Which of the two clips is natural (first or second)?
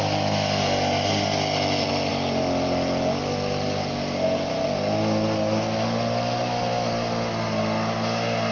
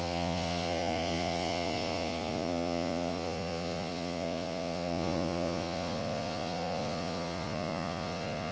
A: first